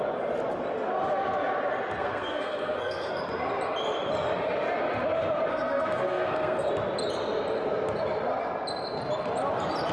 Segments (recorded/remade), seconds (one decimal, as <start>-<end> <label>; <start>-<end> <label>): 0.0-2.0 recorded; 2.0-3.1 remade; 3.1-5.5 recorded; 5.5-6.7 remade; 6.7-9.9 recorded